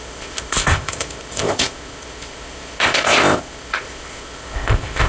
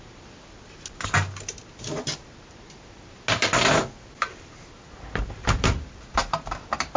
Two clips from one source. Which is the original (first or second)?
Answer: second